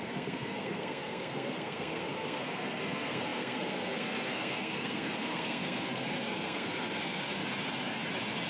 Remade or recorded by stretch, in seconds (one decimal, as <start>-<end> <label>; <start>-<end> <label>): 0.0-7.4 remade; 7.4-8.5 recorded